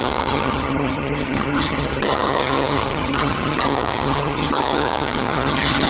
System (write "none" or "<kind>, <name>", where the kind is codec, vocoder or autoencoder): vocoder, HiFi-GAN